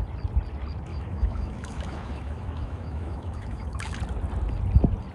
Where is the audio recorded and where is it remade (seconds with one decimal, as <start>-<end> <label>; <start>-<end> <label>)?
0.0-0.9 recorded; 0.9-4.0 remade; 4.0-5.1 recorded